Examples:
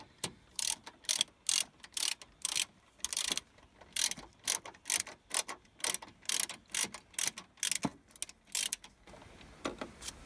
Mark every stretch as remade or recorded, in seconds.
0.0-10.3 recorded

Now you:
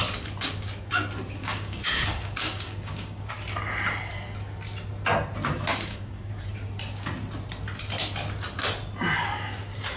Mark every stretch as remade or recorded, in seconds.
0.0-1.4 recorded; 1.4-3.3 remade; 3.3-5.7 recorded; 5.7-6.3 remade; 6.3-10.0 recorded

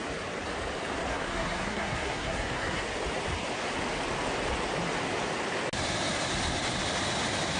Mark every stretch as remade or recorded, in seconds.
0.0-1.1 recorded; 1.1-2.8 remade; 2.8-7.6 recorded

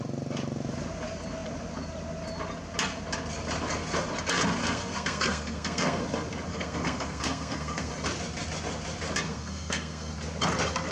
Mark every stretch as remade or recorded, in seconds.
0.0-4.6 recorded; 4.6-6.0 remade; 6.0-6.5 recorded; 6.5-7.9 remade; 7.9-9.3 recorded; 9.3-10.1 remade; 10.1-10.9 recorded

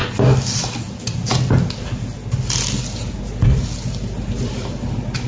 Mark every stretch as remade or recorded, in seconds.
0.0-5.3 recorded

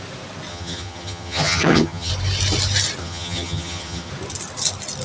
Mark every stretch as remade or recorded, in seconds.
0.0-0.5 recorded; 0.5-2.1 remade; 2.1-3.0 recorded; 3.0-4.1 remade; 4.1-5.0 recorded

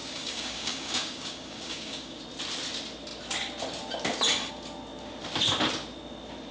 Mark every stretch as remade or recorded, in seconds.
0.0-2.2 remade; 2.2-6.5 recorded